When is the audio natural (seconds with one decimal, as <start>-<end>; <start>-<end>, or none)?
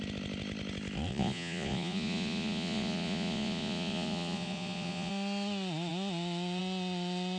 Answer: 0.0-1.1; 5.1-7.4